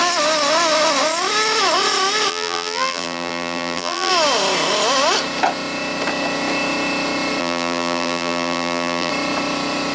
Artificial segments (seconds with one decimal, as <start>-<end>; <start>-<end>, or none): 2.3-4.1; 7.4-9.1